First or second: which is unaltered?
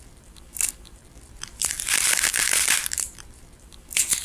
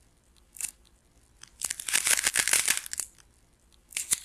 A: second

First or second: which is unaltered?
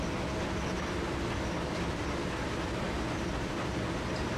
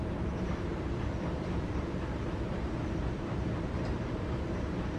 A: first